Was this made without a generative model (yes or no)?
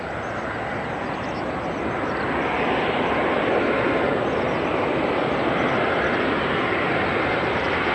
yes